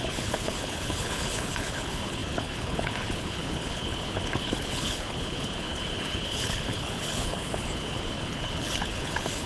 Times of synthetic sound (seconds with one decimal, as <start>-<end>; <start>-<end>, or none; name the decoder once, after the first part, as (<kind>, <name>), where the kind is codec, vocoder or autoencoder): 0.0-9.5 (codec, HILCodec)